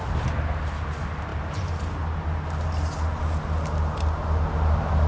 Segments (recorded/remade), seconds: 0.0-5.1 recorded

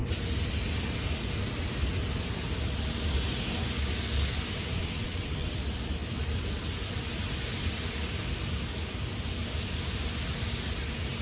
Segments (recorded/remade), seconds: 0.0-4.8 recorded; 4.8-5.5 remade; 5.5-11.2 recorded

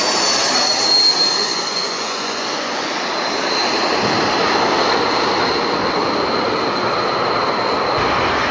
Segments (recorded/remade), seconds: 0.0-1.4 recorded; 1.4-2.9 remade; 2.9-8.5 recorded